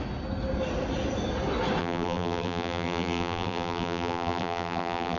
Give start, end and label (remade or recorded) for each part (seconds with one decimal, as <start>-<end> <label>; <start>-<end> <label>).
0.0-1.8 recorded; 1.8-5.2 remade